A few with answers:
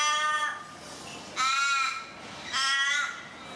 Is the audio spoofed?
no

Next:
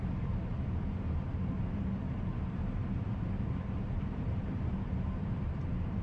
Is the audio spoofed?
yes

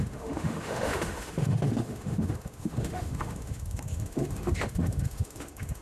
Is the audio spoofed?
yes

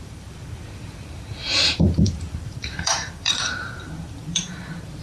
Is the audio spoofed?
yes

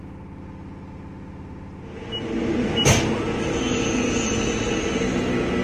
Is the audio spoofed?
no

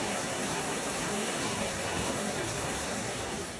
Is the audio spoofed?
yes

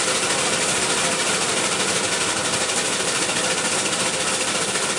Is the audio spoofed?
no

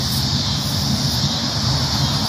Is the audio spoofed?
no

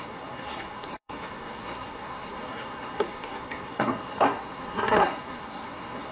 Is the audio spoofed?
yes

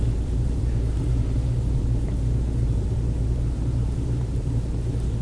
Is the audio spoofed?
yes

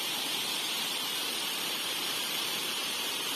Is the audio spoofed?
yes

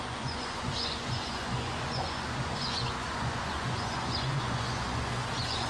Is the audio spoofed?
yes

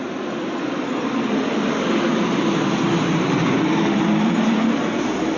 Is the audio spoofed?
no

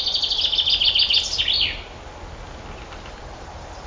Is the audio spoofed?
no